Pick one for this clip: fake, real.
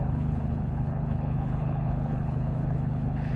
fake